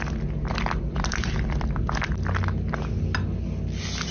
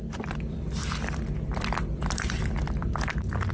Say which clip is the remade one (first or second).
second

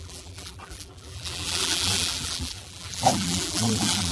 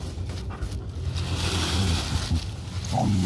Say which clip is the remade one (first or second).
first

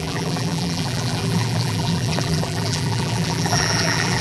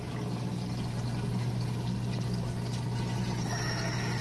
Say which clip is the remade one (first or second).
first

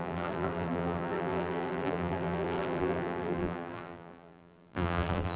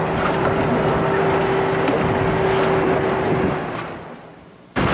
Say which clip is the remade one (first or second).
first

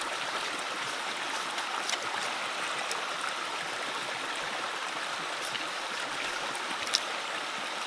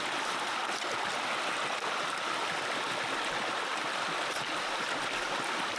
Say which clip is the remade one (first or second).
first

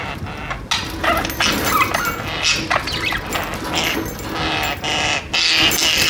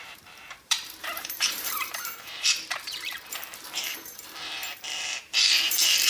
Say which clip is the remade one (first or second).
second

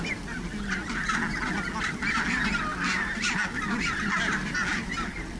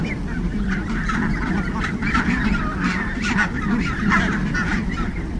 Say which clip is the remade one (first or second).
second